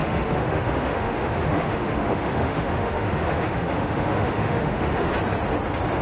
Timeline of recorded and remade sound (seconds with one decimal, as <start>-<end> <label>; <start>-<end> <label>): 0.0-5.1 remade; 5.1-6.0 recorded